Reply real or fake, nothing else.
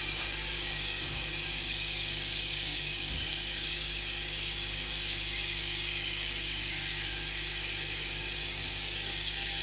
fake